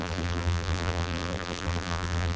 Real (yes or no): no